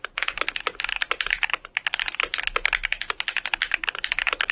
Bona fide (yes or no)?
yes